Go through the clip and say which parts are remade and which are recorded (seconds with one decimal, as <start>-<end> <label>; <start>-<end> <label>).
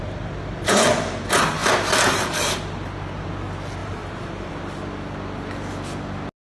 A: 0.0-1.6 recorded; 1.6-2.5 remade; 2.5-3.8 recorded; 3.8-4.5 remade; 4.5-6.4 recorded